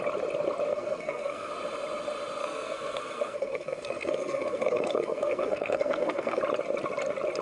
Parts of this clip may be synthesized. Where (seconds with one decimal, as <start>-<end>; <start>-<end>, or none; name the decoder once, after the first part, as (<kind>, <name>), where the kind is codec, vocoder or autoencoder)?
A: 0.7-1.5 (codec, SNAC); 2.4-6.4